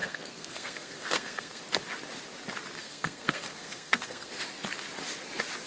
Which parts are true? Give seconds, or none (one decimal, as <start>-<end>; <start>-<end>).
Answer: 1.6-2.8; 4.3-5.7